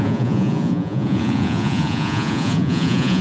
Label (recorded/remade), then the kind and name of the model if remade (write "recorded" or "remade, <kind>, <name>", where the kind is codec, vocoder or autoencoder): remade, vocoder, Vocos